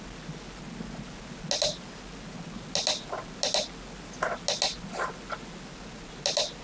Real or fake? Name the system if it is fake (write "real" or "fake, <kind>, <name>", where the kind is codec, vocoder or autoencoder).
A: real